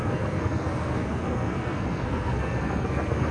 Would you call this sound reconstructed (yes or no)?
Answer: yes